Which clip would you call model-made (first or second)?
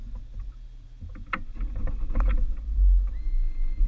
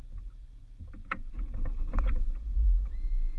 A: second